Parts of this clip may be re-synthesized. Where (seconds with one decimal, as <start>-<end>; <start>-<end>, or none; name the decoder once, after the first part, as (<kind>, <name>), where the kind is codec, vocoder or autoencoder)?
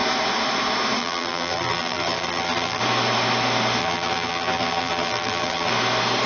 1.0-2.8 (vocoder, BigVGAN v2); 3.8-5.7